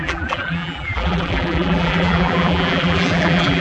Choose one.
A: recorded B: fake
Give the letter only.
B